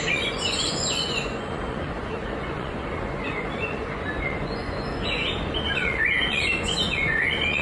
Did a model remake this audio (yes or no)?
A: yes